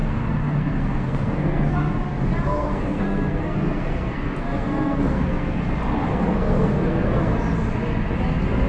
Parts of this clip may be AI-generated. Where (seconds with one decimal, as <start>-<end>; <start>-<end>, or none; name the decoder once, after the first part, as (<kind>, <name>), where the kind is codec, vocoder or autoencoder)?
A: 0.0-1.9 (codec, SNAC); 2.5-5.6; 6.1-7.3